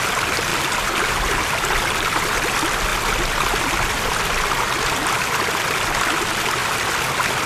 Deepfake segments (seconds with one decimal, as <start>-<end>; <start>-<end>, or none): none